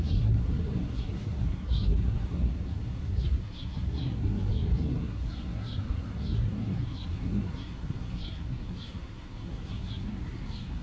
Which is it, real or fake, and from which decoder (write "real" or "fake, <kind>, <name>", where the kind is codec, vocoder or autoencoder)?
fake, codec, SNAC